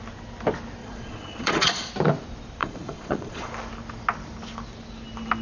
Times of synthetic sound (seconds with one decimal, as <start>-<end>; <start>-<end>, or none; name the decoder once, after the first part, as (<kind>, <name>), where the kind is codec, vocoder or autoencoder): 0.8-1.9 (vocoder, Vocos); 2.6-3.5